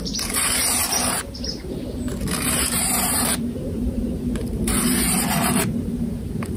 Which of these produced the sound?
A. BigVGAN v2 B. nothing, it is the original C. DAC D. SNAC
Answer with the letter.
A